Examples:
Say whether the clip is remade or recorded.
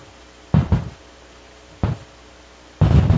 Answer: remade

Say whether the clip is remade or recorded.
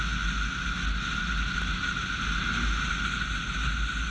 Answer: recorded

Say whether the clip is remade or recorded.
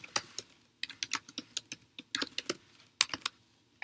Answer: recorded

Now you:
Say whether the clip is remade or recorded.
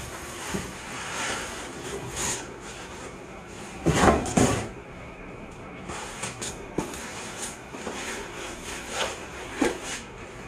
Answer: remade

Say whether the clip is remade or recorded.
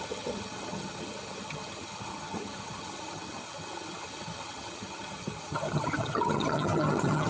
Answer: remade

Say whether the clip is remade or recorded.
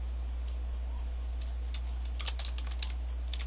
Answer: recorded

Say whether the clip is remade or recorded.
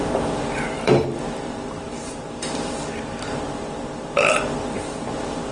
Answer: remade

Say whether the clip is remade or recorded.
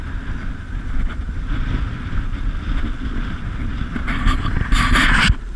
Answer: recorded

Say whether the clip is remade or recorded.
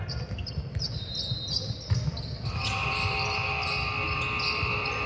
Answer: recorded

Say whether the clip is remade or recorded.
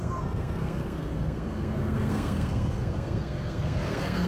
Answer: remade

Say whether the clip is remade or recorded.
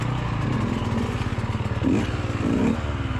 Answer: recorded